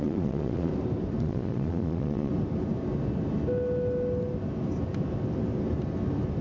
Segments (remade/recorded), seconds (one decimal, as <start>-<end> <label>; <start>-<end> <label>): 0.0-0.7 remade; 0.7-1.2 recorded; 1.2-2.3 remade; 2.3-6.4 recorded